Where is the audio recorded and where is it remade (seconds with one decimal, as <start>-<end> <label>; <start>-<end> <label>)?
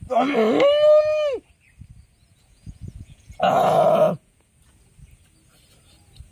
0.0-2.1 recorded; 2.1-4.5 remade; 4.5-6.3 recorded